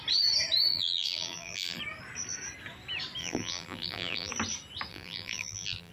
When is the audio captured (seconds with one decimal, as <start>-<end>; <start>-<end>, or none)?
0.0-0.7; 1.8-3.2; 4.3-4.9